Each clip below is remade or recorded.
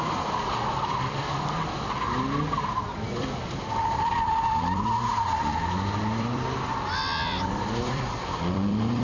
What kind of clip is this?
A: remade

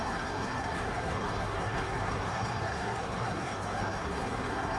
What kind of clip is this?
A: remade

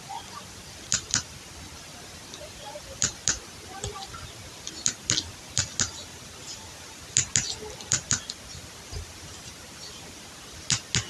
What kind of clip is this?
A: recorded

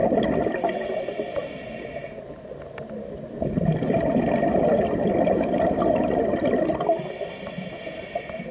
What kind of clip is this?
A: recorded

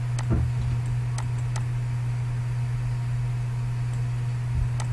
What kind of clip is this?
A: recorded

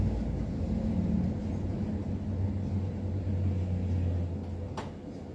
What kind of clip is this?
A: recorded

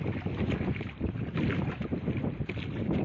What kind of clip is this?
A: remade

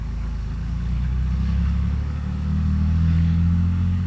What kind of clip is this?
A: remade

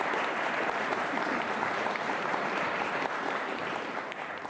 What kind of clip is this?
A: remade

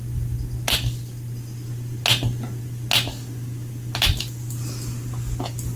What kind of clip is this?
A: recorded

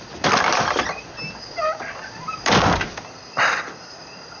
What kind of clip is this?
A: recorded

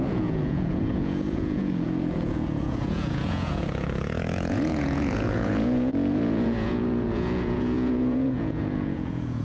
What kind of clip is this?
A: remade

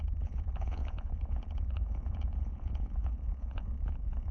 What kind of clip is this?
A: remade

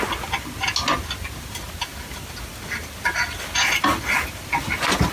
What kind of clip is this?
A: recorded